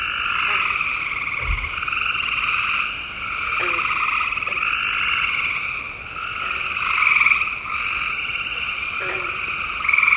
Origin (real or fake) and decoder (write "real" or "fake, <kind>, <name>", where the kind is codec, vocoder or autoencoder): real